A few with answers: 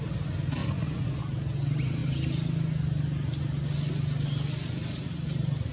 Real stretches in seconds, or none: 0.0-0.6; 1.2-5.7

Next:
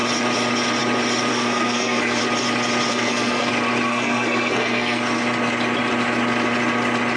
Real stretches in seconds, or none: 0.0-1.3; 2.2-2.9; 3.5-3.9; 5.0-7.2

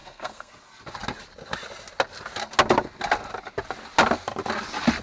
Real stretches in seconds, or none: 0.5-5.0

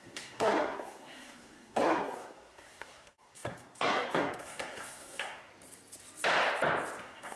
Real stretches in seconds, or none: 5.5-7.0

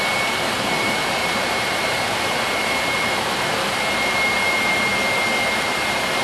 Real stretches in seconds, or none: 4.9-5.5

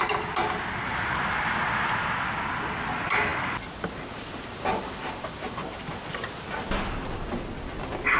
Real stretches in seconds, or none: 0.0-8.2